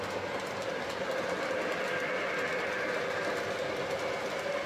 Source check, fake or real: real